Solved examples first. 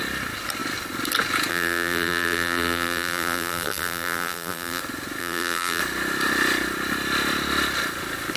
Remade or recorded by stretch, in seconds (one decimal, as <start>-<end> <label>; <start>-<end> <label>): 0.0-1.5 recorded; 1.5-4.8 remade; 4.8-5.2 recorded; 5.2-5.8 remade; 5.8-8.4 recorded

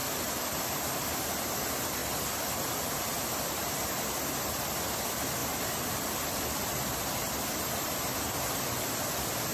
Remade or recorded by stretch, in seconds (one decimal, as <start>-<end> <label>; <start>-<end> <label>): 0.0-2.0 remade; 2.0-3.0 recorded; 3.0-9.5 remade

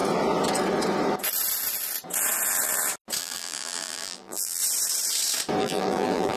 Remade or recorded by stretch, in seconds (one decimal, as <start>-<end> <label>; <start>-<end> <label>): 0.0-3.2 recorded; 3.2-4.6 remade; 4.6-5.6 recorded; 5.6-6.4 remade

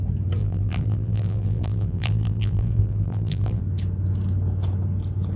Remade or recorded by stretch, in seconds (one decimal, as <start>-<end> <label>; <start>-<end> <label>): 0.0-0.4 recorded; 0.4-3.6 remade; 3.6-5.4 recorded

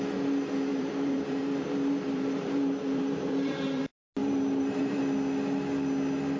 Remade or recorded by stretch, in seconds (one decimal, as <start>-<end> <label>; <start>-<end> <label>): 0.0-0.7 recorded; 0.7-3.8 remade; 3.8-4.2 recorded; 4.2-5.0 remade; 5.0-6.4 recorded

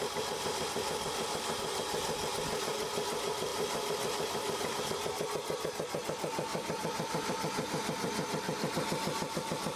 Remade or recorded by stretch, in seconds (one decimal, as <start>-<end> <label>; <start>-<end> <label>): 0.0-6.5 recorded; 6.5-8.7 remade; 8.7-9.8 recorded

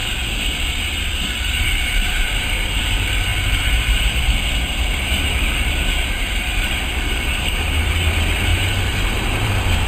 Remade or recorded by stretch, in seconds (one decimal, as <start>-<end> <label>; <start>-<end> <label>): 0.0-1.5 recorded; 1.5-2.8 remade; 2.8-3.3 recorded; 3.3-8.0 remade; 8.0-8.5 recorded; 8.5-9.9 remade

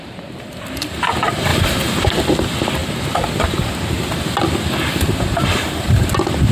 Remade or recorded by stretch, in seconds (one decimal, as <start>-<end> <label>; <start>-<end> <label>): 0.0-1.5 remade; 1.5-2.1 recorded; 2.1-6.5 remade